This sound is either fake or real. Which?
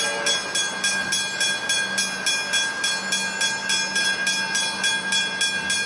real